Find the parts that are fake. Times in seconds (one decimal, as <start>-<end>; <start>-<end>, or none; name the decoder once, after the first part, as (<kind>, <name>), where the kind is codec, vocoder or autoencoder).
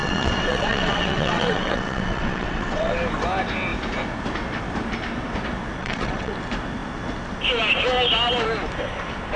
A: 0.0-2.9 (vocoder, WaveNeXt); 5.8-6.3